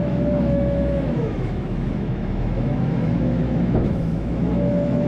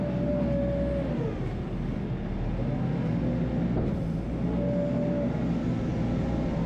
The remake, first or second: first